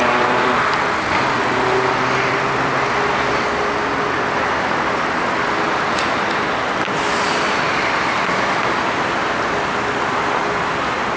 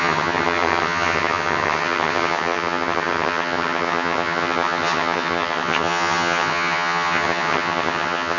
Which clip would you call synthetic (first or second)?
second